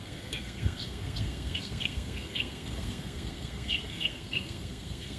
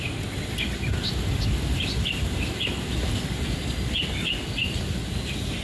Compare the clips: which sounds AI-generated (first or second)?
first